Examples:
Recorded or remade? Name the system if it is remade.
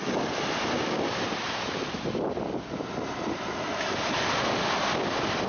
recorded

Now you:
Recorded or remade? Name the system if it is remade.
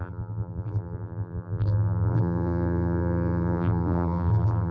remade, vocoder, BigVGAN v2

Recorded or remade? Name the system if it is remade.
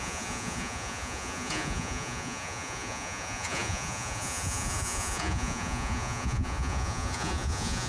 remade, vocoder, Vocos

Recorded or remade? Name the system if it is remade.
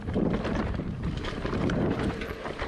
remade, vocoder, BigVGAN v2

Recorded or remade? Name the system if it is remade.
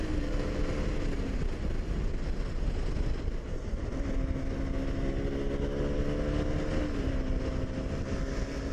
recorded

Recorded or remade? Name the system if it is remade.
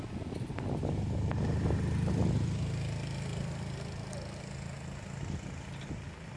recorded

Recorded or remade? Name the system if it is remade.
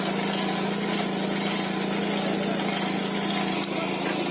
recorded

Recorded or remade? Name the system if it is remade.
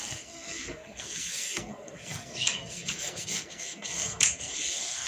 remade, codec, SNAC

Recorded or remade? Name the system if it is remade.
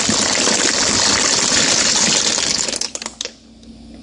recorded